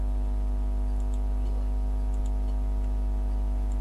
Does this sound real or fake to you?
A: real